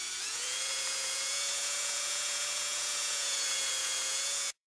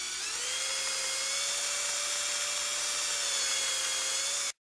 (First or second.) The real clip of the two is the second